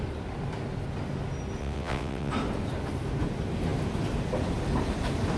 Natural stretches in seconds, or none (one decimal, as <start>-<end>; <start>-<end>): 0.0-1.6; 2.3-5.4